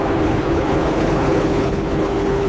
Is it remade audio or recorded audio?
remade